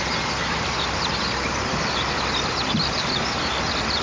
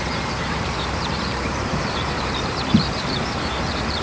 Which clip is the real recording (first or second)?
first